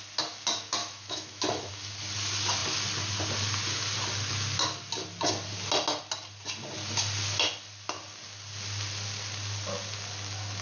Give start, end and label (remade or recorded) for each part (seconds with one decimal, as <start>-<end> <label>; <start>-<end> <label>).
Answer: 0.0-0.8 recorded; 0.8-1.7 remade; 1.7-10.6 recorded

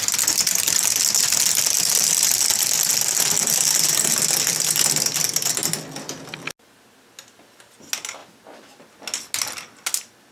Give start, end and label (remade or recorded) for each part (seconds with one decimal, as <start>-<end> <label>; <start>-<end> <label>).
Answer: 0.0-10.3 recorded

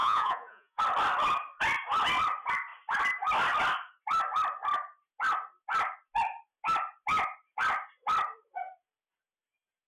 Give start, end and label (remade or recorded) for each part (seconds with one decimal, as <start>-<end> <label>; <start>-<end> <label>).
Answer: 0.0-0.8 remade; 0.8-9.9 recorded

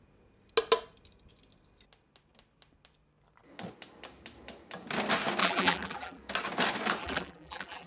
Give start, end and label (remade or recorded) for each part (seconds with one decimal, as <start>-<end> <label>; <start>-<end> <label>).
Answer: 0.0-5.4 recorded; 5.4-6.2 remade; 6.2-7.0 recorded; 7.0-7.9 remade

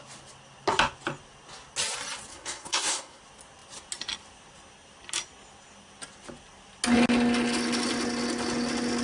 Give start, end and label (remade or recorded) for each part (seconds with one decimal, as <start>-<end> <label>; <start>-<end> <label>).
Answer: 0.0-2.3 recorded; 2.3-3.2 remade; 3.2-9.0 recorded

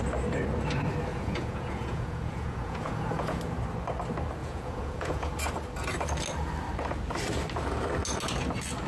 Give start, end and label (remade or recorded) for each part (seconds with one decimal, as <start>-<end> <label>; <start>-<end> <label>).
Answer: 0.0-1.1 recorded; 1.1-3.4 remade; 3.4-4.4 recorded; 4.4-5.3 remade; 5.3-8.9 recorded

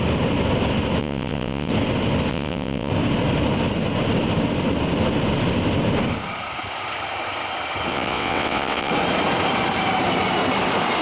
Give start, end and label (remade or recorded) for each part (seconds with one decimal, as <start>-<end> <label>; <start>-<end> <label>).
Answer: 0.0-1.0 recorded; 1.0-1.7 remade; 1.7-2.3 recorded; 2.3-2.9 remade; 2.9-7.9 recorded; 7.9-8.9 remade; 8.9-11.0 recorded